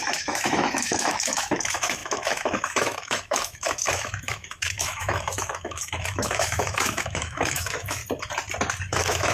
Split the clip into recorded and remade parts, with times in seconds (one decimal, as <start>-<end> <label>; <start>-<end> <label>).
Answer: 0.0-8.0 remade; 8.0-8.9 recorded; 8.9-9.3 remade